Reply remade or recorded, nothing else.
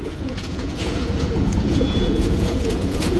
remade